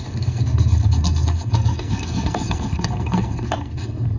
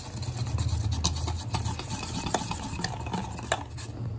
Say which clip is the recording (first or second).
second